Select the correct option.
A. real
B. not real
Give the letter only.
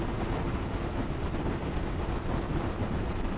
A